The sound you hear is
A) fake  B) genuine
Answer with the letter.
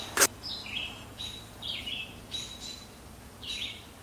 A